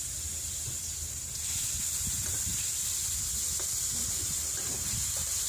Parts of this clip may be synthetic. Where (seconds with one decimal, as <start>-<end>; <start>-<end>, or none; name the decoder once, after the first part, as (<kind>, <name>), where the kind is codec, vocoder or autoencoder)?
none